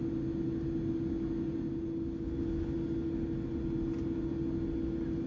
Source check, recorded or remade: recorded